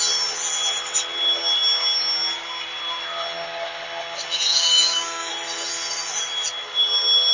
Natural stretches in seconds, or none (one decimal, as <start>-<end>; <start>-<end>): 0.0-4.5; 5.3-7.3